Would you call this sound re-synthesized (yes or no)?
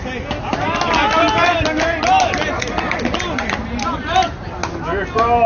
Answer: no